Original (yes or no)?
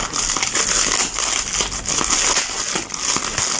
yes